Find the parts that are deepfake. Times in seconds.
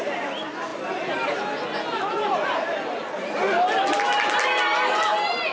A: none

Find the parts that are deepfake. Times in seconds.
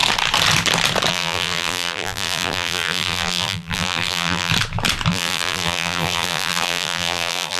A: 1.1-4.5 (vocoder, BigVGAN v2); 5.1-7.6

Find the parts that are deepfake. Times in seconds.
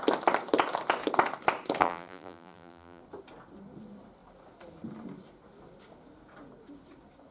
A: 1.8-3.0 (vocoder, BigVGAN v2)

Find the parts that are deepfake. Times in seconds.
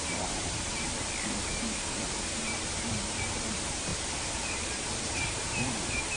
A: 0.0-0.9 (vocoder, BigVGAN v2); 2.2-3.9; 4.7-6.2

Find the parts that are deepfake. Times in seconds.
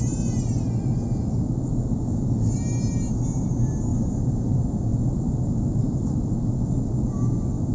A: 4.9-6.3 (vocoder, BigVGAN v2)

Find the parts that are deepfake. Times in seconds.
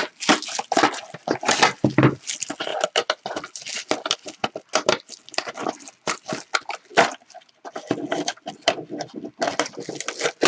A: none